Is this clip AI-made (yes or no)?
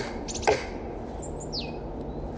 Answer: no